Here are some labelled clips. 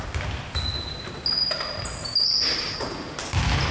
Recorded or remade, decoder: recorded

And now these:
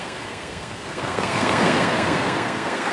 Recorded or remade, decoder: remade, codec, SNAC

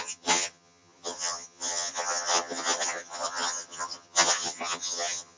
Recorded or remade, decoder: remade, vocoder, HiFi-GAN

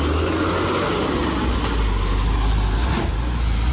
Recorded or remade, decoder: recorded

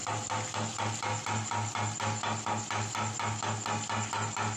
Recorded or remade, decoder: recorded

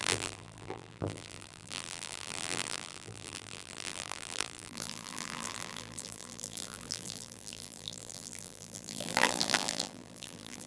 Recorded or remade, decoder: remade, vocoder, BigVGAN v2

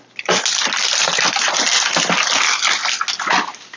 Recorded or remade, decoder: recorded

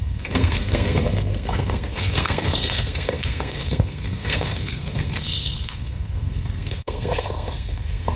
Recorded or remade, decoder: remade, codec, SNAC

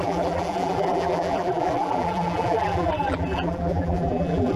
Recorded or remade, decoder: remade, vocoder, BigVGAN v2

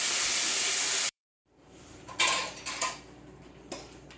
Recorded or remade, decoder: remade, vocoder, BigVGAN v2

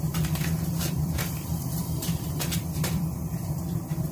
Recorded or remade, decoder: remade, vocoder, BigVGAN v2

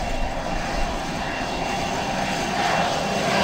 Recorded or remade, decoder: recorded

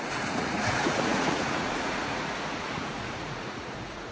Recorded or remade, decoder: remade, vocoder, Vocos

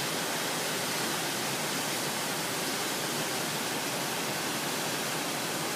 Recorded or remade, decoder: recorded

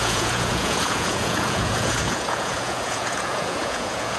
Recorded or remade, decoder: remade, vocoder, Vocos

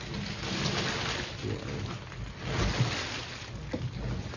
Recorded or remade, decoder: recorded